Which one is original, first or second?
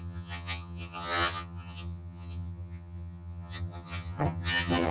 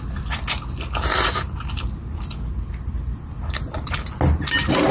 second